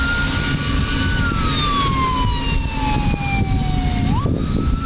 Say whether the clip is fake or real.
real